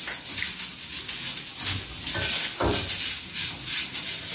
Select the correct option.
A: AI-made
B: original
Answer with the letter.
B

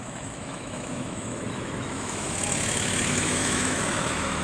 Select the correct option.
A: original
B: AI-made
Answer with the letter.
B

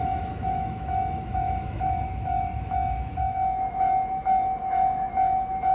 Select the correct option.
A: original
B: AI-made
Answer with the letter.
B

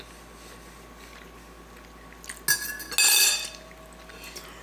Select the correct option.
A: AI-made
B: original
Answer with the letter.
B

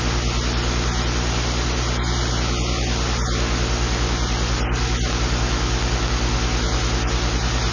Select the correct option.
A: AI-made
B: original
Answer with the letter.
B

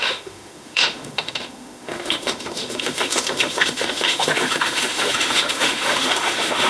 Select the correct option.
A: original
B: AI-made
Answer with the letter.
B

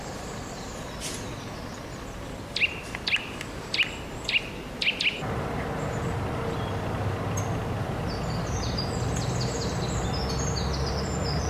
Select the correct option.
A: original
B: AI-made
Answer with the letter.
A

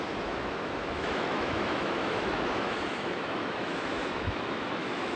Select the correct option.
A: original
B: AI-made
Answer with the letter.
B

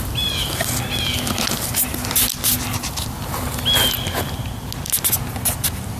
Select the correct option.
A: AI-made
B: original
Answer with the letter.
B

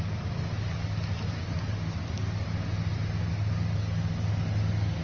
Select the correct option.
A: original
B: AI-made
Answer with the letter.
A